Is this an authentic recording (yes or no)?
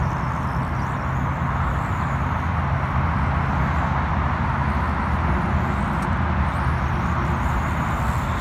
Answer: yes